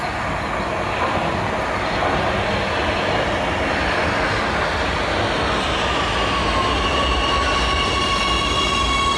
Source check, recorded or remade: recorded